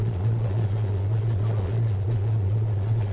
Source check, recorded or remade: remade